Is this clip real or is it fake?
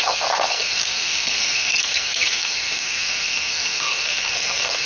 fake